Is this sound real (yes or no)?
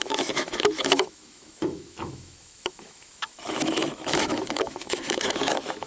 no